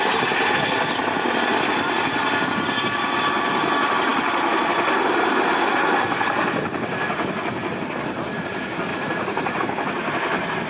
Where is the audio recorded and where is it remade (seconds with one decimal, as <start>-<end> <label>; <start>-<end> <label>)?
0.0-8.9 recorded; 8.9-9.6 remade; 9.6-10.7 recorded